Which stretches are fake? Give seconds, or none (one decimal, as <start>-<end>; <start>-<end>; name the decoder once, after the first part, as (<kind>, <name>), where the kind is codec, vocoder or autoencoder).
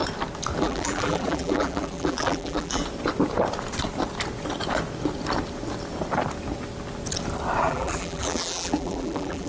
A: 0.6-2.8 (vocoder, BigVGAN v2); 7.6-9.5